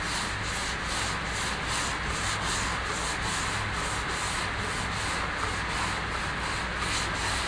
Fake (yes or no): no